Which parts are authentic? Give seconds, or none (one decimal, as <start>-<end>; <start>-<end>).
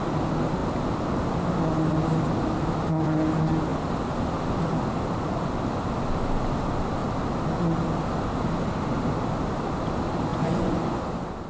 0.0-10.3; 11.0-11.5